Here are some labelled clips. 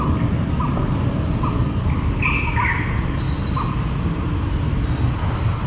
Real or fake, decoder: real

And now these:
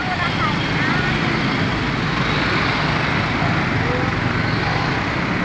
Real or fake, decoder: real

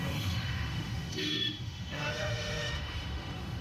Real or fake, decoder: fake, autoencoder, DAC-VAE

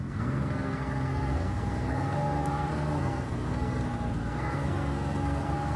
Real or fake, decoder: fake, codec, SNAC